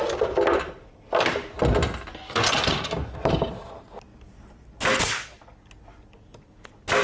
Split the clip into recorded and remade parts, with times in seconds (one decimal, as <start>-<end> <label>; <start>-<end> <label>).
0.0-7.0 recorded